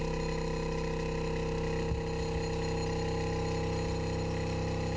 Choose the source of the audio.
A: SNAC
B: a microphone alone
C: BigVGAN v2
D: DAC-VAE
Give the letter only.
B